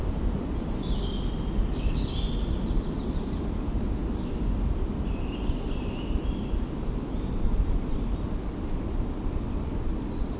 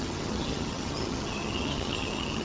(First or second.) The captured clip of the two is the first